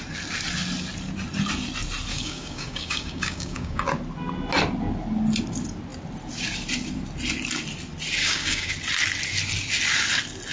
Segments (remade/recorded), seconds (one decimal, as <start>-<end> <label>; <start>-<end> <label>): 0.0-2.1 recorded; 2.1-3.9 remade; 3.9-8.2 recorded; 8.2-8.7 remade; 8.7-10.5 recorded